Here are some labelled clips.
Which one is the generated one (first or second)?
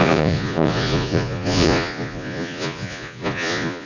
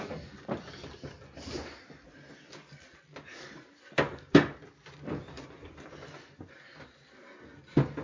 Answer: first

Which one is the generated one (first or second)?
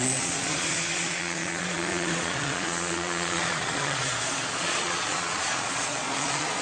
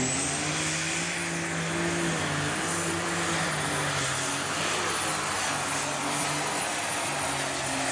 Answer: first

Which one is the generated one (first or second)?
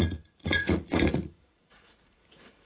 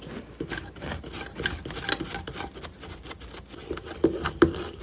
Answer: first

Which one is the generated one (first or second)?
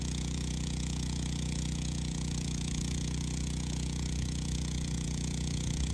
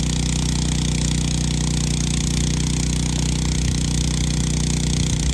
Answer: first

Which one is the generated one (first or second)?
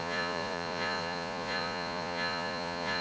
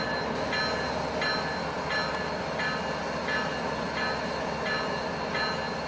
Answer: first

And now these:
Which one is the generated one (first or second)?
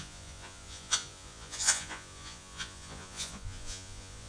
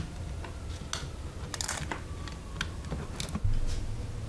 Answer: first